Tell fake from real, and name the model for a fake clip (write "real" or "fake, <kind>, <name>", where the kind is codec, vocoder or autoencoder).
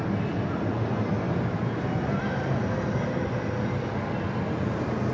real